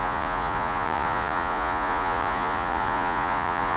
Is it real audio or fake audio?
fake